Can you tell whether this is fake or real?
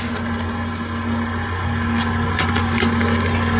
real